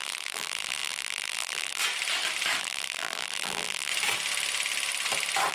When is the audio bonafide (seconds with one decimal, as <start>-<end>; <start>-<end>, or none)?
1.8-2.6; 3.9-5.5